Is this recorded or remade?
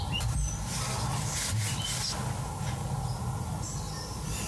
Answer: recorded